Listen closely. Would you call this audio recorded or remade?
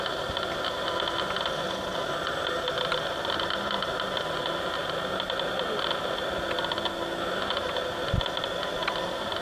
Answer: recorded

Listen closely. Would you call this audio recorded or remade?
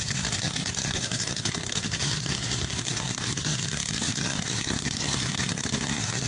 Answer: remade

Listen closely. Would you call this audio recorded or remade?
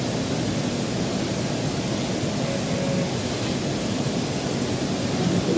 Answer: recorded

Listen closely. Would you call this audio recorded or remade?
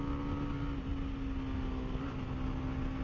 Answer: recorded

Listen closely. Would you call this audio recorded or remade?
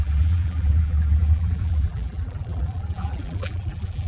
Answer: remade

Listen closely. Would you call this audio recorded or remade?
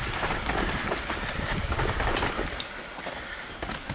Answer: recorded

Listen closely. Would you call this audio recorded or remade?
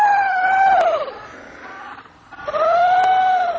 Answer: recorded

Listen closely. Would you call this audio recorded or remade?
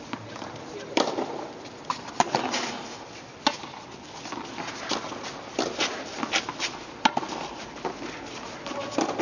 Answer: recorded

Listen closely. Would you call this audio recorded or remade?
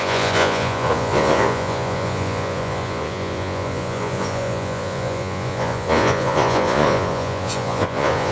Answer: remade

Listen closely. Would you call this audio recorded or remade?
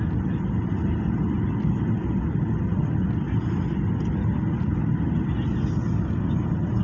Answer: recorded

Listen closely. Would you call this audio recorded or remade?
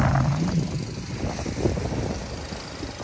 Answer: recorded